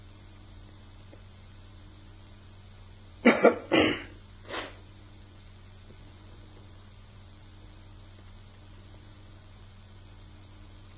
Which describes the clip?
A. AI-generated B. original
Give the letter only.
A